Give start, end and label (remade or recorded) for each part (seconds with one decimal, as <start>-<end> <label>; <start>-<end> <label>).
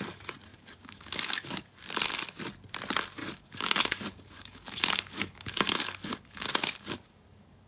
0.0-0.5 recorded; 0.5-1.8 remade; 1.8-3.2 recorded; 3.2-7.7 remade